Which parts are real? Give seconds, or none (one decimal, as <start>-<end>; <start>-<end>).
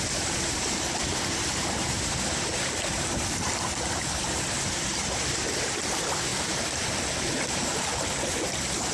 6.3-7.2; 7.9-8.9